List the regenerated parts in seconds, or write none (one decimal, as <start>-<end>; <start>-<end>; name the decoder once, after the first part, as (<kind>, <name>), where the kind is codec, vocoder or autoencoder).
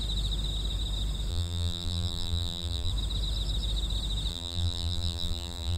1.3-2.9 (vocoder, BigVGAN v2); 4.3-5.8